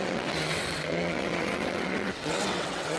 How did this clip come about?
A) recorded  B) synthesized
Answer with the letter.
B